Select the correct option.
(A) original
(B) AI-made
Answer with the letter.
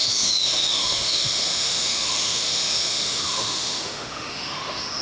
B